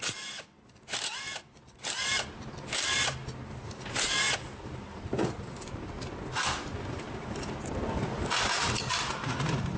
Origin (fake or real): real